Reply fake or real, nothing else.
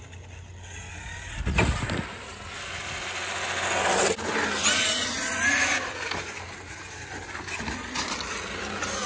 real